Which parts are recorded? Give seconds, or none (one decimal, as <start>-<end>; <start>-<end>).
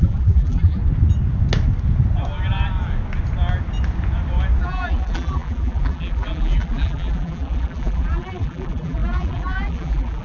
0.8-4.6